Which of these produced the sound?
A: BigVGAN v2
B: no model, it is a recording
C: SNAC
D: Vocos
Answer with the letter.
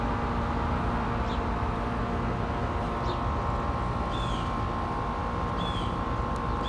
B